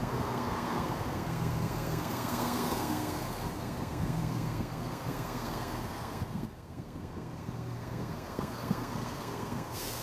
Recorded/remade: remade